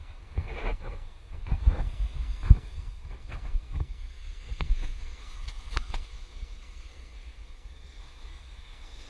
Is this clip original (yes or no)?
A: no